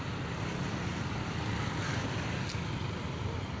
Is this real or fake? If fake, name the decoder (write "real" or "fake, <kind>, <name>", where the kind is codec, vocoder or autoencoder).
real